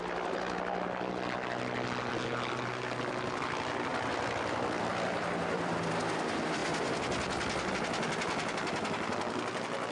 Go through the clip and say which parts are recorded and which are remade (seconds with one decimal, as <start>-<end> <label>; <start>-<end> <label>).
0.0-3.9 recorded; 3.9-5.9 remade; 5.9-9.9 recorded

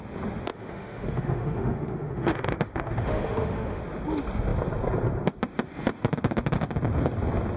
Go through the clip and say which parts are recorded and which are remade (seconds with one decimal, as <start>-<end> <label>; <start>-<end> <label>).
0.0-0.5 recorded; 0.5-3.8 remade; 3.8-7.6 recorded

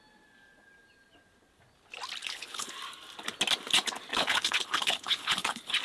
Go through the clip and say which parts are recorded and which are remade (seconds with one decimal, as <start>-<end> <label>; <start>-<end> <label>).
0.0-2.2 recorded; 2.2-2.7 remade; 2.7-4.1 recorded; 4.1-5.8 remade

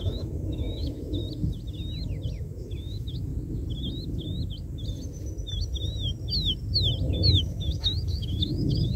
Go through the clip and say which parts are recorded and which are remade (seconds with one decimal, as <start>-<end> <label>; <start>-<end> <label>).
0.0-1.2 remade; 1.2-2.4 recorded; 2.4-3.3 remade; 3.3-7.1 recorded; 7.1-9.0 remade

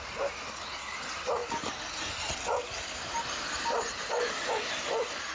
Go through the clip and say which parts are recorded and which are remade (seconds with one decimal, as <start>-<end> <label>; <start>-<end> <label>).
0.0-5.3 recorded